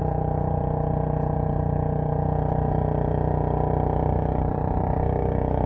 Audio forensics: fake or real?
fake